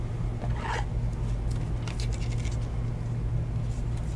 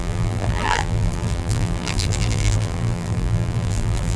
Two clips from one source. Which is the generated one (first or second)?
second